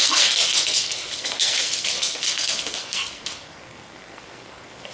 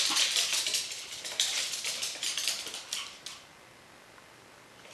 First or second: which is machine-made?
first